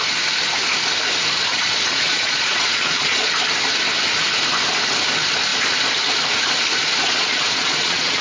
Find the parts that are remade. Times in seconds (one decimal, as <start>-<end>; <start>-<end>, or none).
1.5-3.3; 7.1-8.2

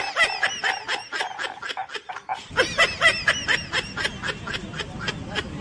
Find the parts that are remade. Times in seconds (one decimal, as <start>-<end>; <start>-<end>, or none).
none

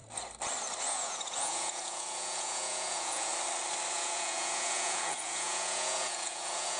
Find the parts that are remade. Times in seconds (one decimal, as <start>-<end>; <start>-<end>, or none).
0.8-3.3; 3.9-6.8

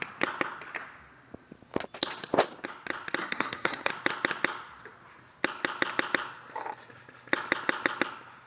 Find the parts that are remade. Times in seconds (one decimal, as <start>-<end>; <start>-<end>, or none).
3.2-3.9

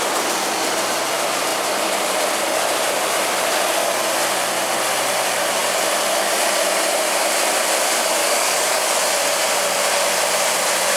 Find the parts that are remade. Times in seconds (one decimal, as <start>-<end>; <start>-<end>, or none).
8.2-9.0

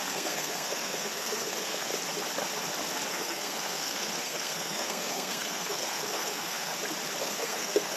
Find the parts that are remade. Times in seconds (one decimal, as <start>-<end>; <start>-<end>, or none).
0.0-1.9; 3.1-6.7; 7.2-8.0

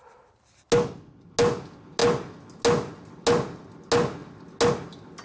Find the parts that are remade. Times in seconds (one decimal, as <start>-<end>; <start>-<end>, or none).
none

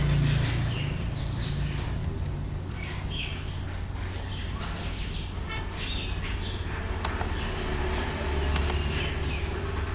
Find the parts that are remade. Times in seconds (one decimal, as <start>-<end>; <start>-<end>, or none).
2.0-4.3